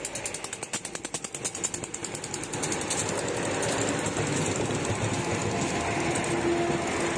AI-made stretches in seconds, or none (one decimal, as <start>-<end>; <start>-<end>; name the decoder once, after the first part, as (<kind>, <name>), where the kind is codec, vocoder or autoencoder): none